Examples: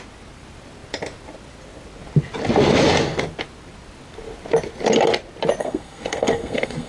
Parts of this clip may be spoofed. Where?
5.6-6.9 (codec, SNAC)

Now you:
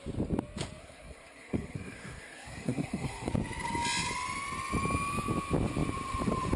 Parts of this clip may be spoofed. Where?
0.8-3.3 (codec, SNAC)

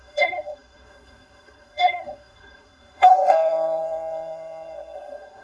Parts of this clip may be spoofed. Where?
0.0-5.4 (codec, SNAC)

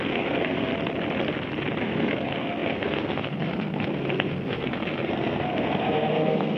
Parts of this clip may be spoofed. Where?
0.0-0.7 (codec, SNAC); 1.8-6.6

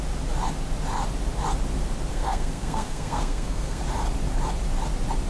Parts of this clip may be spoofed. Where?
2.1-3.8 (codec, SNAC)

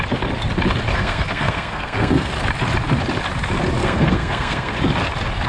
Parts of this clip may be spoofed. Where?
0.9-2.3 (codec, SNAC); 3.8-4.8

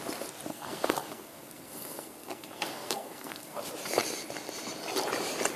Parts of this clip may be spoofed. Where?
0.5-3.6 (codec, SNAC)